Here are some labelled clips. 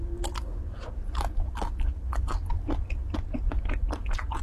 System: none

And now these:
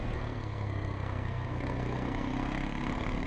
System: codec, SNAC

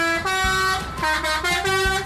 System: none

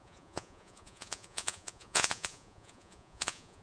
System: vocoder, Vocos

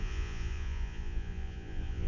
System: vocoder, Vocos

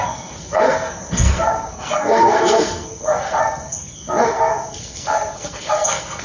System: codec, SNAC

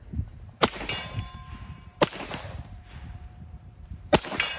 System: vocoder, BigVGAN v2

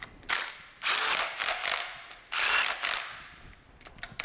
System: none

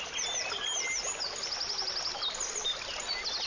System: none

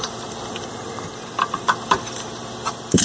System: vocoder, BigVGAN v2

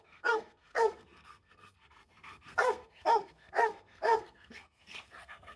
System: codec, SNAC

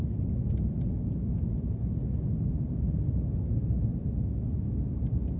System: none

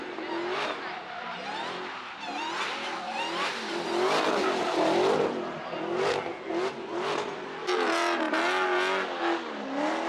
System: none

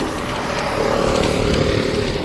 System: none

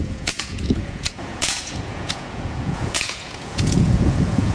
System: vocoder, Vocos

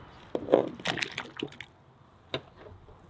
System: none